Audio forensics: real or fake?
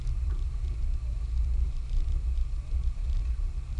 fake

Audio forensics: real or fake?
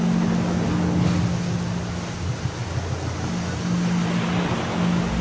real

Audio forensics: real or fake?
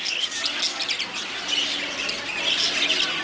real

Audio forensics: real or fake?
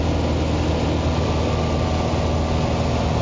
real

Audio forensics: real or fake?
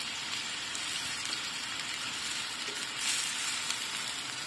real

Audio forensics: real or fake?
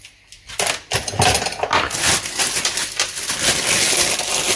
real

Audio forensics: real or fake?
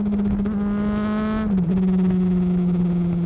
real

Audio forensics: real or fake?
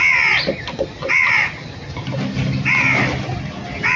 real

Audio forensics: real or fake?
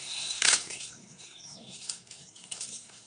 fake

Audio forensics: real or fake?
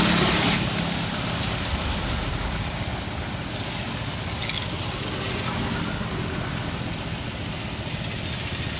real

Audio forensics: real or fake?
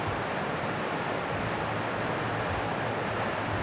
real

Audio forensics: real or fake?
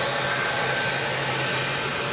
real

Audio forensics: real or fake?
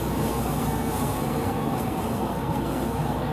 fake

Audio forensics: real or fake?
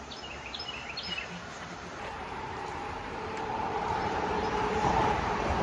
fake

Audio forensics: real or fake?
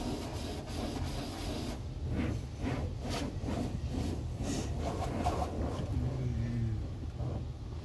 real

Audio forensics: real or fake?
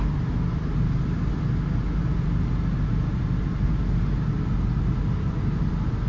real